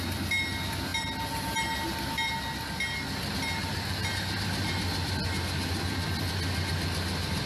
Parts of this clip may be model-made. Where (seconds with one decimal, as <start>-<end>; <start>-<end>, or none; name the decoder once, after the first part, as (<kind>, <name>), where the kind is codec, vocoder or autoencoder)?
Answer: none